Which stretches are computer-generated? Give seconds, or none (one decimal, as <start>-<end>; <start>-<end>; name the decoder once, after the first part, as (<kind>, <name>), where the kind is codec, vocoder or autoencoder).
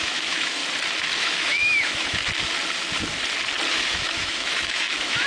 0.0-0.6 (autoencoder, DAC-VAE); 1.2-2.2; 3.7-5.3